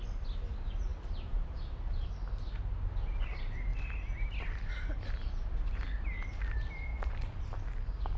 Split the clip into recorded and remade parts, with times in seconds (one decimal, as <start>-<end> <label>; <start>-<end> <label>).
0.0-0.9 recorded; 0.9-2.1 remade; 2.1-8.2 recorded